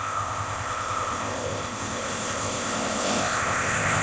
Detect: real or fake fake